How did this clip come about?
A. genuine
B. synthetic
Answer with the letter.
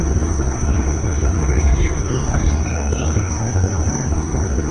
B